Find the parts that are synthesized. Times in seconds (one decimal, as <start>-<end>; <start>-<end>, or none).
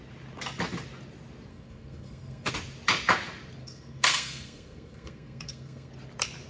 1.5-2.5; 3.6-5.9